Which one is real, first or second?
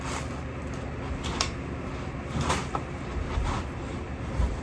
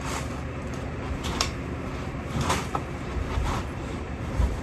first